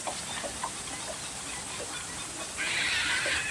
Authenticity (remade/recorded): recorded